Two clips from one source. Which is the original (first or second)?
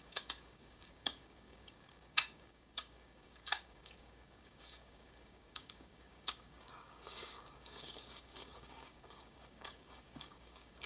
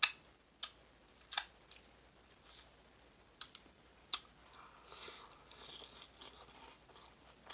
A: second